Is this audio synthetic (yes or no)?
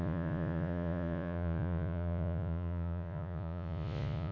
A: yes